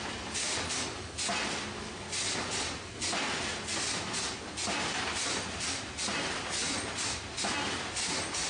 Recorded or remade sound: recorded